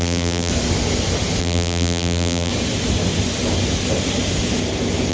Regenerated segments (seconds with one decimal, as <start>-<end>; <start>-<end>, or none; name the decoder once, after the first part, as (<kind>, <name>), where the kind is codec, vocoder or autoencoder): 0.0-0.5 (vocoder, BigVGAN v2); 1.4-2.5